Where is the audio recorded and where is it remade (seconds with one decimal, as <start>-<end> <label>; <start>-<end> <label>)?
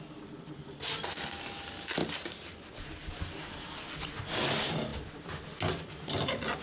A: 0.0-6.6 recorded